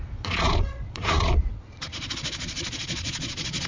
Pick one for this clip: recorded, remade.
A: remade